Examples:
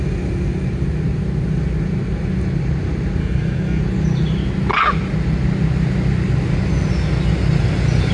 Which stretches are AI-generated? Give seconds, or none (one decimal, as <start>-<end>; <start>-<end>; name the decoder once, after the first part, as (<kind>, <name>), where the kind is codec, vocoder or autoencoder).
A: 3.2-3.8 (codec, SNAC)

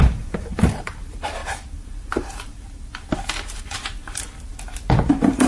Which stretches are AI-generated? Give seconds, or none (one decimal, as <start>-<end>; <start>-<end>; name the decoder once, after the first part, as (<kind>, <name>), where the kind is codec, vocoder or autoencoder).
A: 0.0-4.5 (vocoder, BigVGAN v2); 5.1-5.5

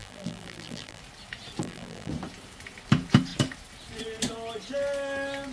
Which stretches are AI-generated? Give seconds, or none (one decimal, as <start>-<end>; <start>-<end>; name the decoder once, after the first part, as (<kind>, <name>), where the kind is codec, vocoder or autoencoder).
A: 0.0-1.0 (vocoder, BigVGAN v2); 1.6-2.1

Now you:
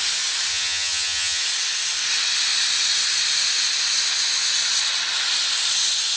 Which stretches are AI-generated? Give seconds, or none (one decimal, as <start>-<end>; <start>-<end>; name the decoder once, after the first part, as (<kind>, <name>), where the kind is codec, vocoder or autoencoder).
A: 0.5-1.4 (vocoder, HiFi-GAN)